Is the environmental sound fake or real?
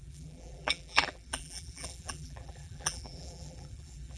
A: fake